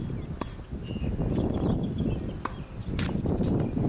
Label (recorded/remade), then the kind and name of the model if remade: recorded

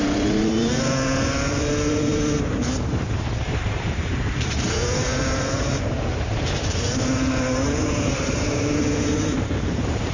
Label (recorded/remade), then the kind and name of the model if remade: remade, vocoder, BigVGAN v2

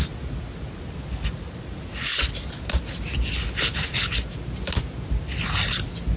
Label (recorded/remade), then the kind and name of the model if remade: recorded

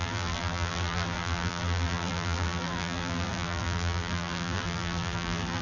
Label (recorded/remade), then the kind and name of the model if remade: remade, vocoder, BigVGAN v2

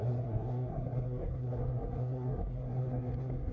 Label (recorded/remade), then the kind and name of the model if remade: remade, codec, SNAC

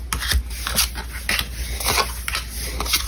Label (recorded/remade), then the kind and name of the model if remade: recorded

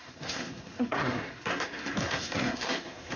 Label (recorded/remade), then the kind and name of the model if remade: remade, codec, SNAC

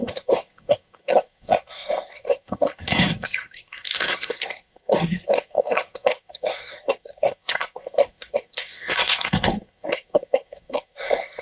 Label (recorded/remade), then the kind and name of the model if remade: remade, codec, SNAC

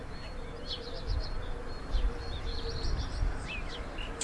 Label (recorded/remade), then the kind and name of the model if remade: recorded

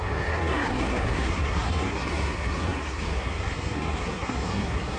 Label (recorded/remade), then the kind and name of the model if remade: remade, codec, SNAC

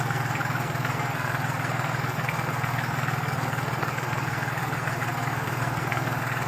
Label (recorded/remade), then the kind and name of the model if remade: remade, codec, SNAC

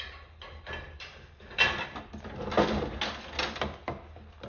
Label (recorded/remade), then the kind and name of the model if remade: recorded